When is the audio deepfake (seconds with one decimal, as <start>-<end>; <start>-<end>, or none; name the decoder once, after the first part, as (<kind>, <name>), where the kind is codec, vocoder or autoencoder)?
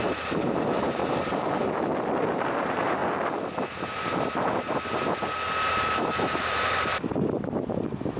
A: 0.0-1.0 (vocoder, BigVGAN v2); 2.3-3.0; 5.7-8.2